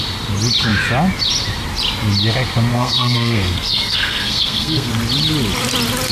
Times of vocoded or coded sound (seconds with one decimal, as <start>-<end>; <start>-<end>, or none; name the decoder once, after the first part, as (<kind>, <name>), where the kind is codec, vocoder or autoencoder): 2.7-4.9 (codec, SNAC)